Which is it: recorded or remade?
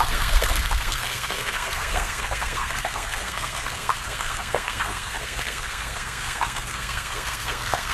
remade